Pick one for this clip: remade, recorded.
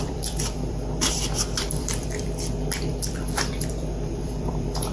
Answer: remade